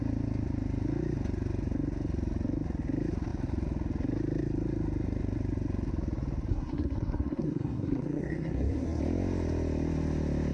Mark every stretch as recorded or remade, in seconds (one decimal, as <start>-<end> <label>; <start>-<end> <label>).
0.0-6.5 recorded; 6.5-9.0 remade; 9.0-10.5 recorded